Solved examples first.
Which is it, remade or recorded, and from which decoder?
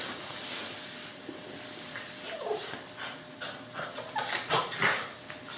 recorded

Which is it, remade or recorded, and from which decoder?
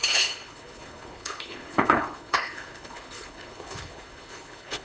remade, codec, HILCodec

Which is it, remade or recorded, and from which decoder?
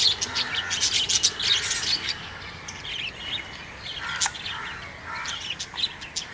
recorded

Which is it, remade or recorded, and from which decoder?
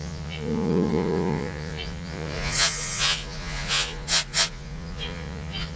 remade, vocoder, Vocos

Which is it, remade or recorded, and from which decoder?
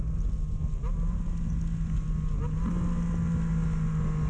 recorded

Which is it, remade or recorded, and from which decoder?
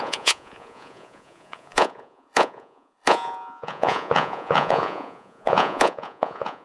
remade, vocoder, Vocos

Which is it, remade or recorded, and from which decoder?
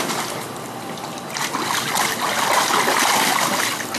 recorded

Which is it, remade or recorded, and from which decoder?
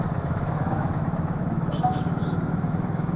remade, autoencoder, DAC-VAE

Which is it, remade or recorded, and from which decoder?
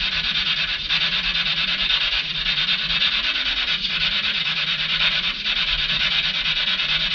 recorded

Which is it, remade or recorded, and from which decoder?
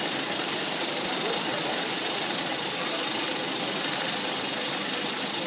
recorded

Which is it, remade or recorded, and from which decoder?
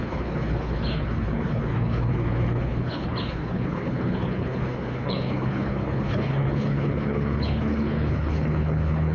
remade, codec, HILCodec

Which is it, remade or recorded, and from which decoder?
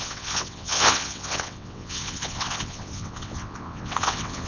remade, vocoder, WaveNeXt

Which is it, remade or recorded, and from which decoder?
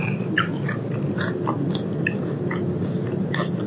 recorded